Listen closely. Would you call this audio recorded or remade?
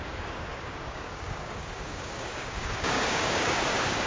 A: remade